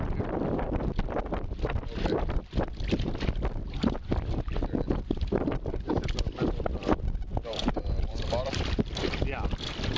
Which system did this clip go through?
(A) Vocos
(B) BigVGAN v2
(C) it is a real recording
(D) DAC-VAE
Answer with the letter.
B